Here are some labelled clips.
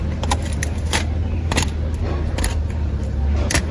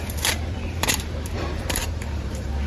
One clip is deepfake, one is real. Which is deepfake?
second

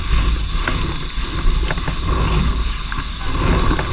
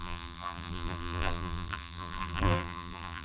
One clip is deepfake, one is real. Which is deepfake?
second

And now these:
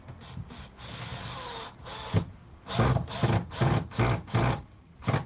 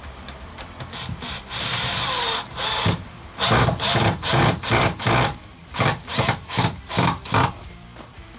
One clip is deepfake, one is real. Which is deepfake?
second